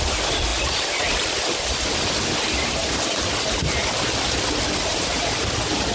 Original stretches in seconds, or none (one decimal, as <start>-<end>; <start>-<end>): 0.0-0.5; 2.0-3.8; 5.2-5.9